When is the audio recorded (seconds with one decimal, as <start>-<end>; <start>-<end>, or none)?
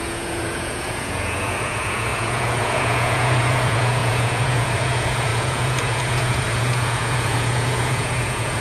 none